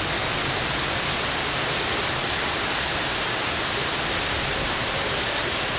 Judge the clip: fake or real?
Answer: real